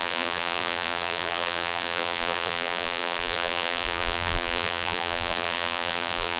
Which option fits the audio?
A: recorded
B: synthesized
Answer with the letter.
B